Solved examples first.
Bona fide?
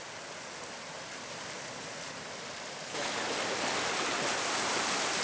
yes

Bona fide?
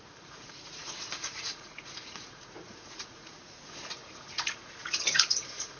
no